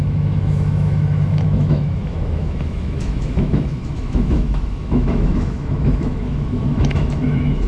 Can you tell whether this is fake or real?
fake